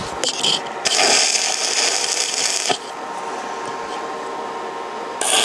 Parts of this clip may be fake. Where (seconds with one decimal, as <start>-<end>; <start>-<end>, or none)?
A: none